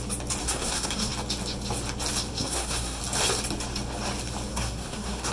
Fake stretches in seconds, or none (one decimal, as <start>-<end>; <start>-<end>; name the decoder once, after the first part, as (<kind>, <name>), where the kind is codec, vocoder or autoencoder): 0.4-1.1 (codec, SNAC); 2.3-3.0; 4.5-5.3